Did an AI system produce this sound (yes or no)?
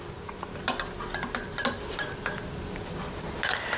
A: no